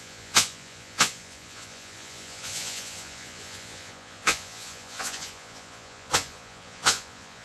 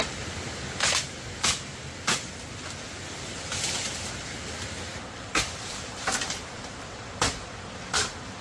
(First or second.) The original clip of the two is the second